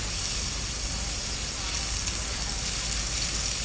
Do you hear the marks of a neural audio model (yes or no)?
no